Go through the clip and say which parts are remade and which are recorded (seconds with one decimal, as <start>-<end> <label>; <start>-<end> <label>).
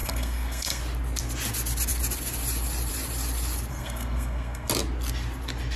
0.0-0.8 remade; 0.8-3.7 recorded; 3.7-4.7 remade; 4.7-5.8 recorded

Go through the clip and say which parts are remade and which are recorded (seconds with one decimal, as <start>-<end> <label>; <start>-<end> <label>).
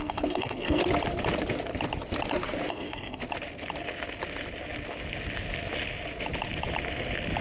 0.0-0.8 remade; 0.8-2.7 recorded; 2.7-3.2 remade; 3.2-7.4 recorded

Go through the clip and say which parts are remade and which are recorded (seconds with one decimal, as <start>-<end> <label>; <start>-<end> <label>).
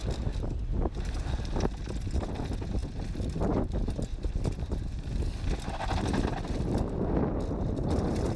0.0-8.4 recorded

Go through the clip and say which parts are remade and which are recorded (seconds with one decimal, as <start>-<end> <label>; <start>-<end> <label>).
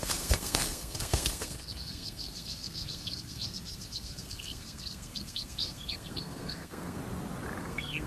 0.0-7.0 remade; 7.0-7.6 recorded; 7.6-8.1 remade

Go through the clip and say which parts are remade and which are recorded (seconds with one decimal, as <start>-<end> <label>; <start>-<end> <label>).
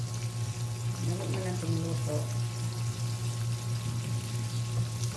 0.0-5.2 recorded